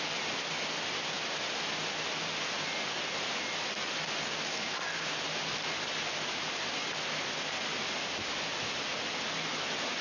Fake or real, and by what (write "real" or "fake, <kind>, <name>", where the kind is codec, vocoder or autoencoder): real